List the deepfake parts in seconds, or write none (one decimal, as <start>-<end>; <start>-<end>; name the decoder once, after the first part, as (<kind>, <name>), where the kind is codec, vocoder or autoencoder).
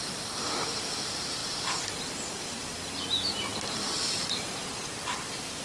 0.0-5.6 (vocoder, BigVGAN v2)